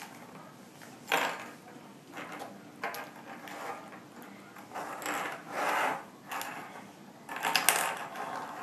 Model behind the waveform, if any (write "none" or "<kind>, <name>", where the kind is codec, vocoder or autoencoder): none